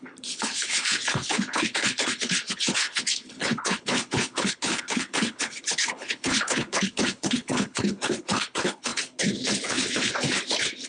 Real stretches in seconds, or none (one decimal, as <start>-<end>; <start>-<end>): none